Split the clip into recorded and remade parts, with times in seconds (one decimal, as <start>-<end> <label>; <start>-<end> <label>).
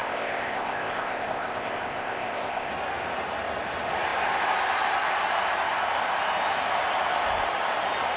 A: 0.0-2.7 remade; 2.7-8.2 recorded